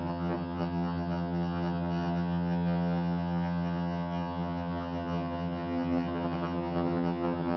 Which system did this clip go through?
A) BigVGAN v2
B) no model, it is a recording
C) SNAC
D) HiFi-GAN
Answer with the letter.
D